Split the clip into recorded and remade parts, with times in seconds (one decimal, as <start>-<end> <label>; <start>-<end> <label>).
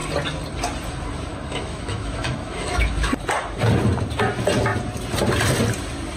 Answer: 0.0-1.3 recorded; 1.3-3.1 remade; 3.1-6.2 recorded